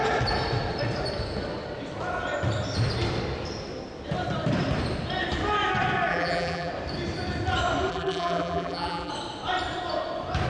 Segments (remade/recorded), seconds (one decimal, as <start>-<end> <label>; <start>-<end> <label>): 0.0-6.1 recorded; 6.1-6.7 remade; 6.7-7.9 recorded; 7.9-9.1 remade; 9.1-10.5 recorded